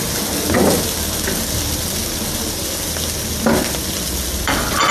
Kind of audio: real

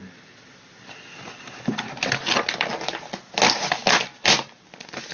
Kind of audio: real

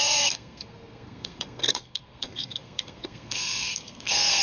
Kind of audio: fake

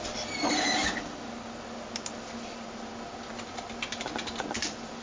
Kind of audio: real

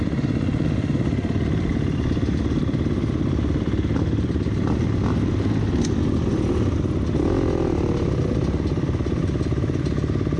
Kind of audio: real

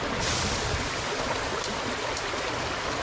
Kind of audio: real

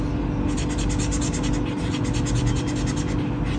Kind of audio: real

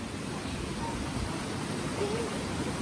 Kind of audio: real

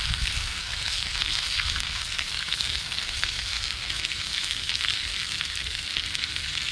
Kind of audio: fake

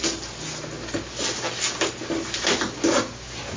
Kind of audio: real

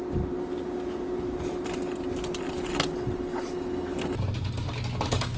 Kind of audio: real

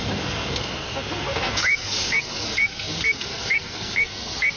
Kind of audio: fake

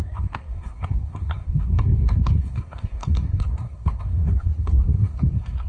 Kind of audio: fake